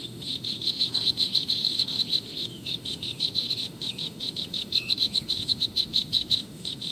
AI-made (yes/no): yes